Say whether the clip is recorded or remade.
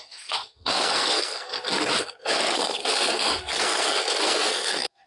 remade